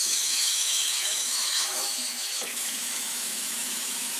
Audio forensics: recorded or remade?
remade